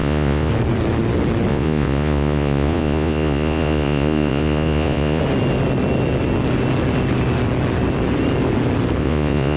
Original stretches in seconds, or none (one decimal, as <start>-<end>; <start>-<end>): 0.5-1.5; 5.2-9.0